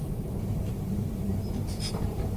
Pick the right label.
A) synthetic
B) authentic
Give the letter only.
A